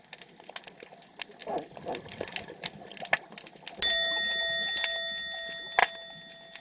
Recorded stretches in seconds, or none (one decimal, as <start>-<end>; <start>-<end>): 0.0-6.6